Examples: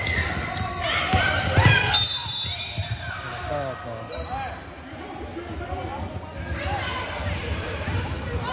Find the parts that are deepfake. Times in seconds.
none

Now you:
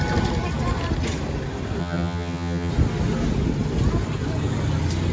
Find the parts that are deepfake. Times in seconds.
1.8-2.7